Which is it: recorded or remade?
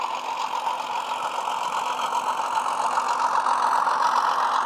recorded